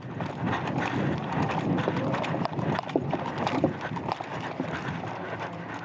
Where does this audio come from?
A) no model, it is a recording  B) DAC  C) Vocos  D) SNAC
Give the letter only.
A